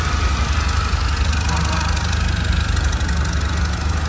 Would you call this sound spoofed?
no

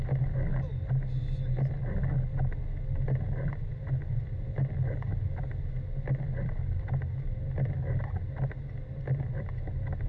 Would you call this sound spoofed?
no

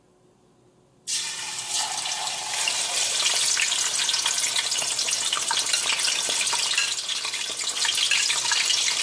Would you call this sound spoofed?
yes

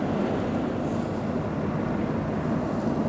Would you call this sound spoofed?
no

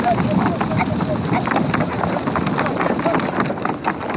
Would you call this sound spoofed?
no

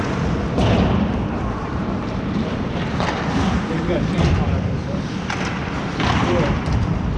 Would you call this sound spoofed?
yes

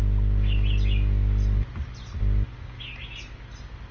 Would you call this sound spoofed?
no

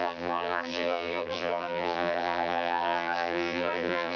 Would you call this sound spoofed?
yes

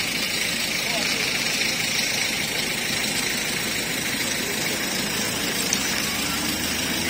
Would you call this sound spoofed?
no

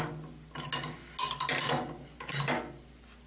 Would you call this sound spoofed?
no